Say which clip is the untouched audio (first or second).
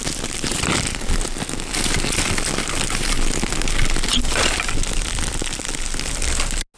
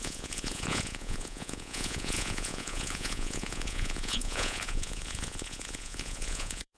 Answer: first